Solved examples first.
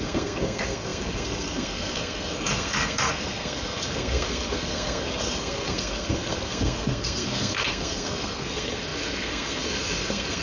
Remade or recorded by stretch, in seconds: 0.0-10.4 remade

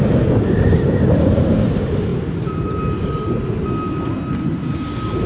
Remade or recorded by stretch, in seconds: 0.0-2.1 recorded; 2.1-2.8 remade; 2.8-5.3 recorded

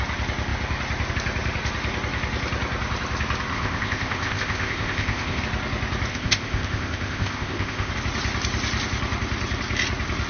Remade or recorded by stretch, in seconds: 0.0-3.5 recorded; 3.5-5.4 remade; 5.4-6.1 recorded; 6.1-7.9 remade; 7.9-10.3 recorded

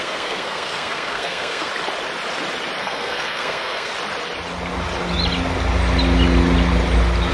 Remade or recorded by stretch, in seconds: 0.0-1.7 remade; 1.7-2.8 recorded; 2.8-3.9 remade; 3.9-7.3 recorded

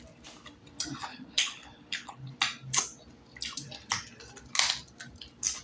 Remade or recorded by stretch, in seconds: 0.0-1.1 recorded; 1.1-2.3 remade; 2.3-5.6 recorded

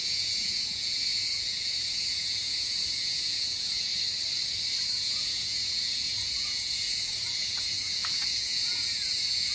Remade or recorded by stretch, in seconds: 0.0-3.9 remade; 3.9-4.8 recorded; 4.8-9.5 remade

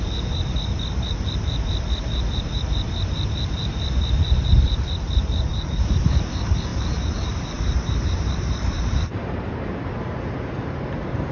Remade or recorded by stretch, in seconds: 0.0-11.3 remade

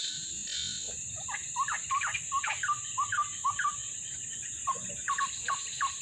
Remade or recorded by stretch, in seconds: 0.0-6.0 recorded